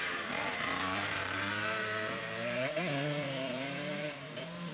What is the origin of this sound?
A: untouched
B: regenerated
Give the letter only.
B